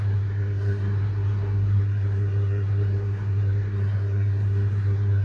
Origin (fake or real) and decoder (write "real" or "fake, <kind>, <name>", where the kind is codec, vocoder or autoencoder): fake, codec, SNAC